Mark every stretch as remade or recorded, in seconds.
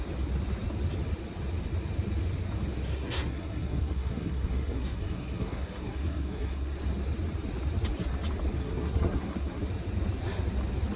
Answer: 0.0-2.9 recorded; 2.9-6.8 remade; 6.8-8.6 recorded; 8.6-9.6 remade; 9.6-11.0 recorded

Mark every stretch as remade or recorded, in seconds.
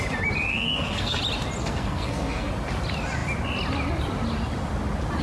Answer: 0.0-0.5 recorded; 0.5-1.2 remade; 1.2-1.6 recorded; 1.6-2.5 remade; 2.5-5.2 recorded